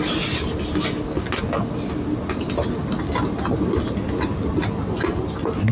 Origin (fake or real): real